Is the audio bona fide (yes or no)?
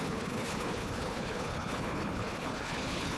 no